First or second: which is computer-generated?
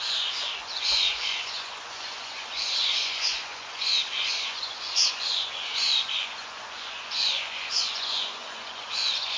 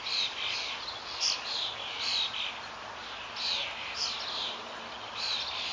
first